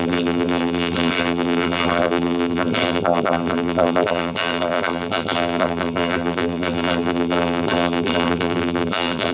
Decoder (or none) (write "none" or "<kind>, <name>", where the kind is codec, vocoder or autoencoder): vocoder, BigVGAN v2